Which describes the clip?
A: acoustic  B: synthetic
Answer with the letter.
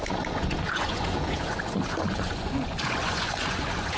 B